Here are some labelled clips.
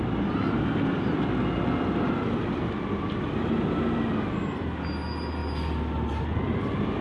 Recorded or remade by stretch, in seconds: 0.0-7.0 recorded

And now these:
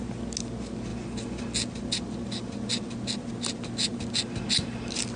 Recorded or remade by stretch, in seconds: 0.0-5.2 recorded

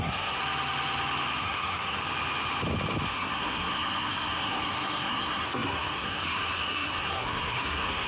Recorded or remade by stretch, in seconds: 0.0-0.4 remade; 0.4-1.4 recorded; 1.4-2.0 remade; 2.0-3.1 recorded; 3.1-8.1 remade